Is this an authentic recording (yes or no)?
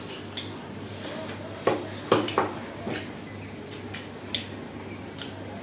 yes